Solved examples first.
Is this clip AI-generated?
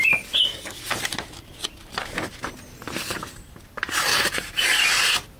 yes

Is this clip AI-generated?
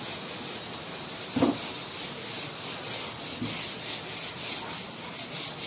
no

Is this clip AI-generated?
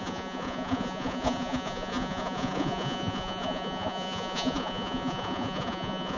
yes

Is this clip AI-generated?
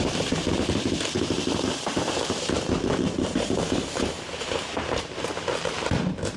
yes